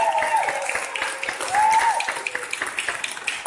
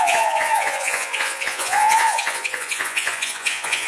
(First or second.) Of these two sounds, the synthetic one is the second